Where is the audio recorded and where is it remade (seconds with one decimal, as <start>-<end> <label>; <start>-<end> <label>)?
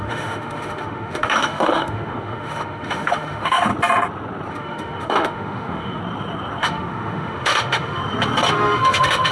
0.0-3.7 remade; 3.7-4.5 recorded; 4.5-6.0 remade; 6.0-6.6 recorded; 6.6-8.0 remade; 8.0-8.5 recorded; 8.5-9.3 remade